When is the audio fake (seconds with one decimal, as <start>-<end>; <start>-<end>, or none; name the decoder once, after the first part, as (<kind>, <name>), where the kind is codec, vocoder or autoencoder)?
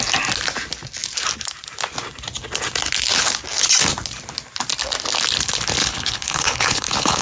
5.8-7.2 (codec, HILCodec)